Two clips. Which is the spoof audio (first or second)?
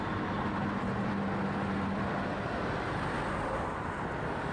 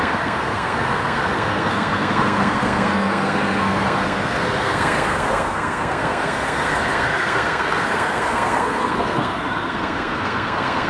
second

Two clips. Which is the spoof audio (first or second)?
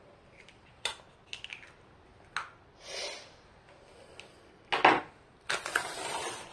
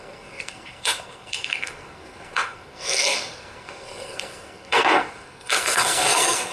second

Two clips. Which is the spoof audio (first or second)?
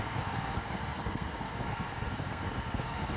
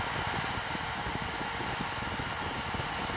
first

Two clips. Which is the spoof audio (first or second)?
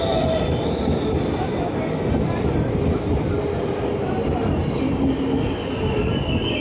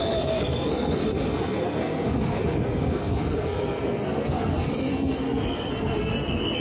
second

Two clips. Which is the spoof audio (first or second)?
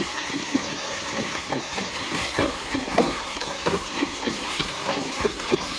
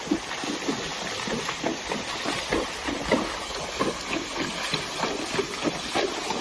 first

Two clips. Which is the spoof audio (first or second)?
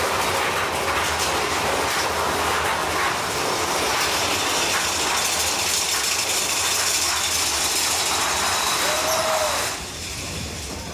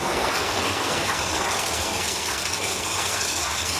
second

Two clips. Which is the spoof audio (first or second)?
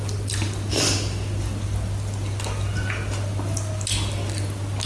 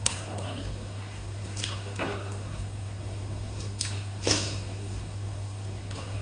second